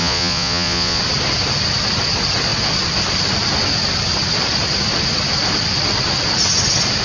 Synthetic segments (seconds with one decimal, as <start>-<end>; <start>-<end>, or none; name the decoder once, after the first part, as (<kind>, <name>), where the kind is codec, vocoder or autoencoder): 0.0-1.0 (vocoder, Vocos)